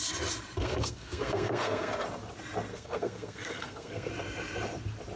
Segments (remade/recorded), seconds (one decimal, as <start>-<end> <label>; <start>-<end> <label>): 0.0-0.6 recorded; 0.6-1.9 remade; 1.9-2.7 recorded; 2.7-4.1 remade; 4.1-5.2 recorded